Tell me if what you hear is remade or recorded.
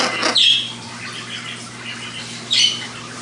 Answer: recorded